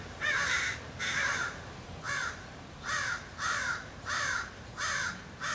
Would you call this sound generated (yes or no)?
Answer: yes